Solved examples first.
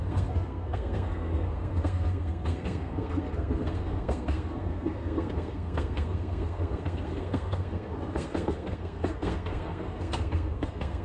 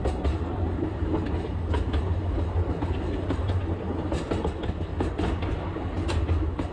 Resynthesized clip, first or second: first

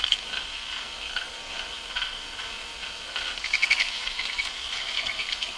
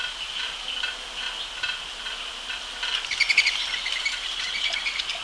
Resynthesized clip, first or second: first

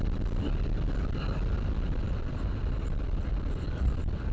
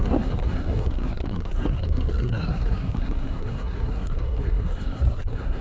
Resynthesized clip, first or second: second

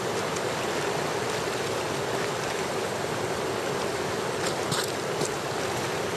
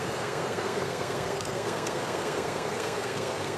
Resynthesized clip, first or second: second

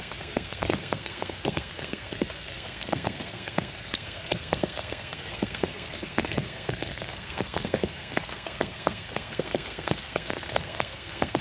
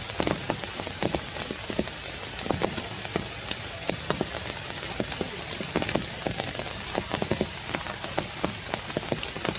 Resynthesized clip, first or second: first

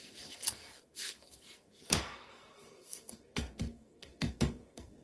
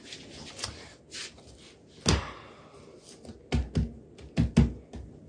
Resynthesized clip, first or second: first